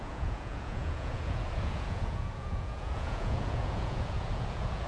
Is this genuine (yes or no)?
no